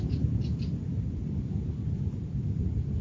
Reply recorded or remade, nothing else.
recorded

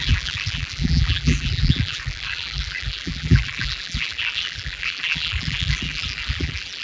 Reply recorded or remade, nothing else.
remade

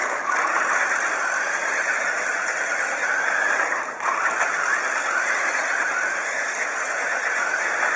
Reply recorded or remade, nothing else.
recorded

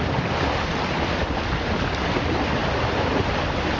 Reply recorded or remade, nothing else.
recorded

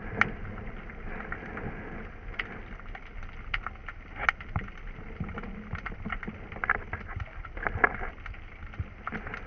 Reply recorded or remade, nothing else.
recorded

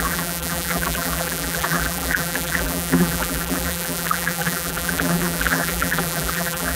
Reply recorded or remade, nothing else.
remade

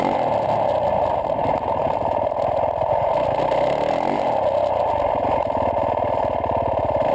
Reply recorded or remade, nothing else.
recorded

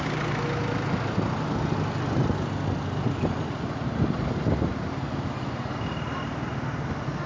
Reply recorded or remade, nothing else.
recorded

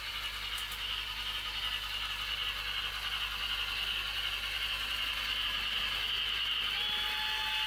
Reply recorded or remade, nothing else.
recorded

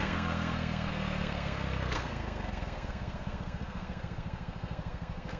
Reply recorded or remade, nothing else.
remade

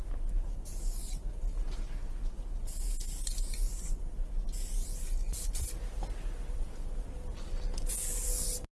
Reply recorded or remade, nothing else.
recorded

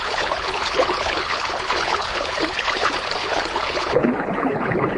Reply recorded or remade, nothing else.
remade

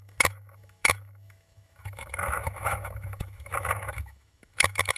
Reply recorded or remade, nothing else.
remade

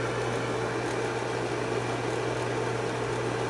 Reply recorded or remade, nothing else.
recorded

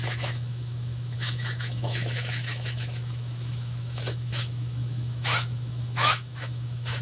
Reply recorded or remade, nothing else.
remade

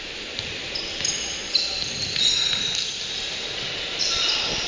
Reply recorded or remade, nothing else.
recorded